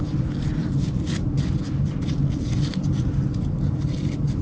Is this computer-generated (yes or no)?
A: no